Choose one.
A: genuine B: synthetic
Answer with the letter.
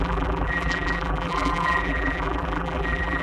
B